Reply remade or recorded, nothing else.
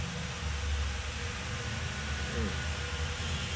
recorded